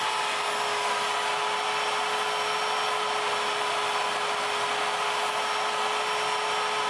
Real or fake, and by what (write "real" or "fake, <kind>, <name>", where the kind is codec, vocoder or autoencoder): real